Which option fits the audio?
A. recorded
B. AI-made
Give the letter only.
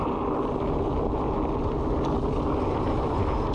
A